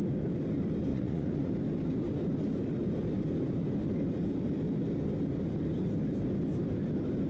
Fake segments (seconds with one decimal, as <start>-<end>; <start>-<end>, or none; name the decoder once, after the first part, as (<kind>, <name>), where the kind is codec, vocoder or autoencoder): 0.9-1.5 (vocoder, Vocos)

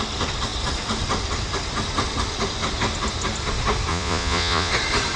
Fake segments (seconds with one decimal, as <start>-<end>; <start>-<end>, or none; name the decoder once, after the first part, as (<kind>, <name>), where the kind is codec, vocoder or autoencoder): 3.9-4.7 (vocoder, Vocos)

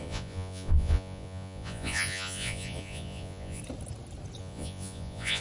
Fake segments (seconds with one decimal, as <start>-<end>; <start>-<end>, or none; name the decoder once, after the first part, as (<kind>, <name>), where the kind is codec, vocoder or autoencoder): 0.0-3.6 (vocoder, Vocos); 4.4-5.4

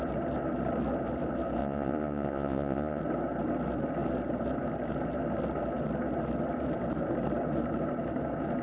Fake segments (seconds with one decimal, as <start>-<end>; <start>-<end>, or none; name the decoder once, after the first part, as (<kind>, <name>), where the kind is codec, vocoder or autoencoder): 1.6-3.0 (vocoder, Vocos)

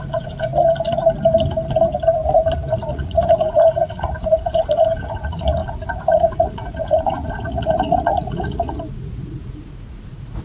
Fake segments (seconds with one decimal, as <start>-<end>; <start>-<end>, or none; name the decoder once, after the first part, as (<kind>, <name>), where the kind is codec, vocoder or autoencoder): 0.0-0.5 (vocoder, Vocos); 2.9-10.4

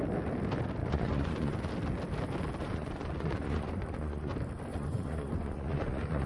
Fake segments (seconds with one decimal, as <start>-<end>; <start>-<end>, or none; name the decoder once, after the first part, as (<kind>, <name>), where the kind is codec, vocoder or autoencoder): 0.8-1.7 (vocoder, Vocos); 2.6-4.3; 4.7-6.3

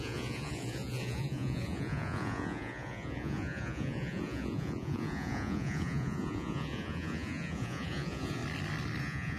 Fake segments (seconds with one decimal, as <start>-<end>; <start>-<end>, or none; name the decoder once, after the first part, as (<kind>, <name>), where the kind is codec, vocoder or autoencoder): 0.0-8.4 (vocoder, Vocos); 9.0-9.4

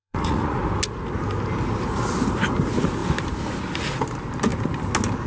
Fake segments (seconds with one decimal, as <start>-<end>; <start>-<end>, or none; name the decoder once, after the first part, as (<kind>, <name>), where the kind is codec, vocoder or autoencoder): 0.0-0.6 (vocoder, Vocos)